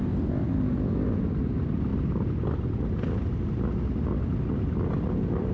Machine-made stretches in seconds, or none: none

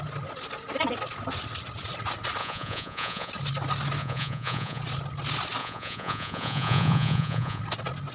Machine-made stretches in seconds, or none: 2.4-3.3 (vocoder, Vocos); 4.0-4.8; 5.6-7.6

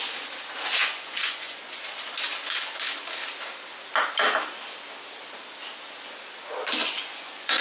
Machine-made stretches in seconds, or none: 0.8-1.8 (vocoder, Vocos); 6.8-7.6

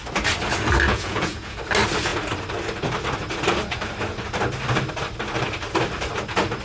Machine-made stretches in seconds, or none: 0.9-1.6 (vocoder, Vocos)

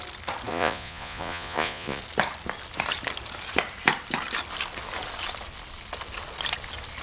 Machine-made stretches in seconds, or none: 0.5-2.0 (vocoder, Vocos)